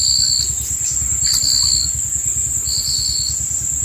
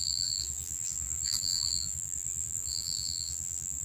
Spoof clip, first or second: second